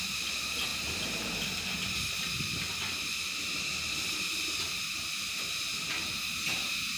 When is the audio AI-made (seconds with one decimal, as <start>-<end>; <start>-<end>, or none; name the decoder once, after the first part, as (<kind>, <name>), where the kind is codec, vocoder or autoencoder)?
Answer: none